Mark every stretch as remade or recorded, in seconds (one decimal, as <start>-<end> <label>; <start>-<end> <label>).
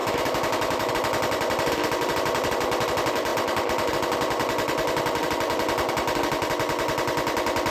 0.0-0.9 remade; 0.9-7.7 recorded